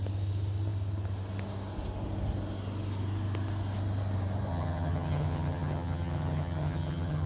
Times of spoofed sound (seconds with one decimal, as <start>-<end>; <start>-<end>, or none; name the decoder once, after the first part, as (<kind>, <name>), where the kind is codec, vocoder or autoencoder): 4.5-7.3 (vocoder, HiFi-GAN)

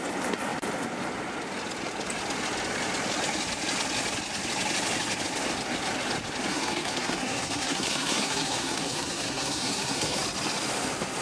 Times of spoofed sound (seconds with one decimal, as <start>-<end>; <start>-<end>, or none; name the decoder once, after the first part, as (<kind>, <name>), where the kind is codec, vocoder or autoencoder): 6.5-10.2 (codec, SNAC)

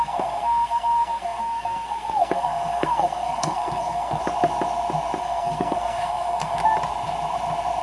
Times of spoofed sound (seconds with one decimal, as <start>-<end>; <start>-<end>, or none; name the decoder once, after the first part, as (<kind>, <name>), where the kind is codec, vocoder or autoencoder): 0.0-4.2 (codec, SNAC); 5.2-6.6

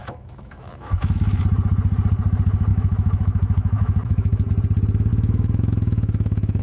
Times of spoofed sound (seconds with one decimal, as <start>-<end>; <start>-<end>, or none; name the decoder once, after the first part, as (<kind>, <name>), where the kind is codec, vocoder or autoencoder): 0.0-1.4 (autoencoder, DAC-VAE); 2.7-4.5; 5.1-6.6

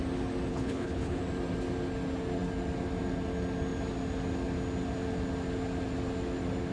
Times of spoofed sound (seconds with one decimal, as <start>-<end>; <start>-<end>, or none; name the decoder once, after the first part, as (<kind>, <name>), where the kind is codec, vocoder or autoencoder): 0.5-1.2 (codec, HILCodec)

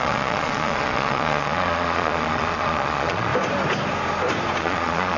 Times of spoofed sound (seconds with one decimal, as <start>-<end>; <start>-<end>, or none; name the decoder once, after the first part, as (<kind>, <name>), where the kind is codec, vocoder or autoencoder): 0.0-3.3 (vocoder, Vocos); 4.6-5.2

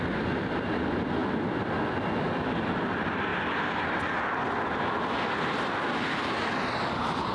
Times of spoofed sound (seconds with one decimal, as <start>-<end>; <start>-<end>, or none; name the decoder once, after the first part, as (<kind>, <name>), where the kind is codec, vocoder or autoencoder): none